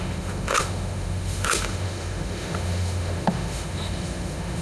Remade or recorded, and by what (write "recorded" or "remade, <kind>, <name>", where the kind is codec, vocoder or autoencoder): remade, autoencoder, DAC-VAE